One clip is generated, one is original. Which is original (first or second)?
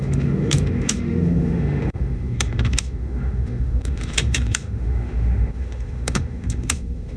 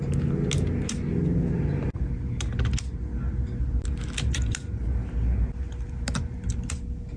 second